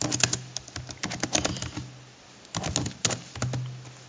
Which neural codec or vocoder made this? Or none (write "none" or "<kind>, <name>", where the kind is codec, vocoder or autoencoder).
none